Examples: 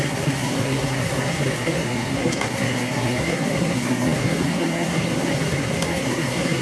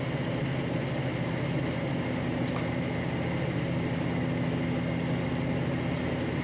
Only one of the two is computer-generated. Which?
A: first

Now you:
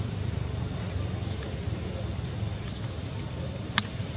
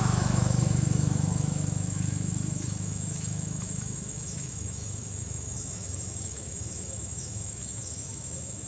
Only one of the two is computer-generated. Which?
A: second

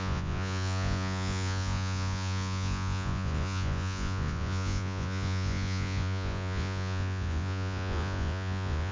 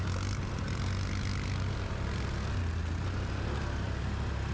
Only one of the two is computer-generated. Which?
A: first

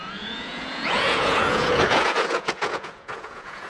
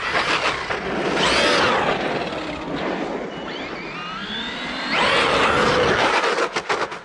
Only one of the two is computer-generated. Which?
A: first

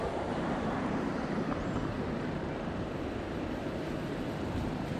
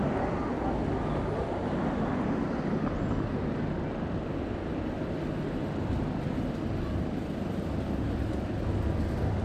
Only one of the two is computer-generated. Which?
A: first